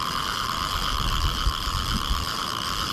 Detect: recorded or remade remade